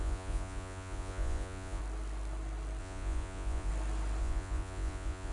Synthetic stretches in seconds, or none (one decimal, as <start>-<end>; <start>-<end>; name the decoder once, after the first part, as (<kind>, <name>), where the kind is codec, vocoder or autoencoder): 0.0-1.8 (vocoder, Vocos); 2.8-3.7; 4.2-5.3